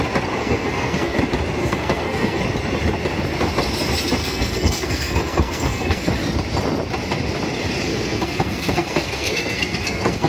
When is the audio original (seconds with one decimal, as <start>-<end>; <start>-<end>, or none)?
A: 0.0-0.4; 1.2-1.6; 2.4-4.2; 6.1-7.9